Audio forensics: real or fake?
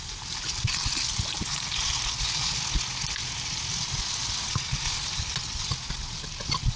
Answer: real